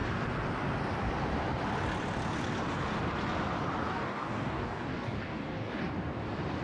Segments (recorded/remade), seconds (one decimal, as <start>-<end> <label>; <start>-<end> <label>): 0.0-3.9 recorded; 3.9-5.8 remade; 5.8-6.6 recorded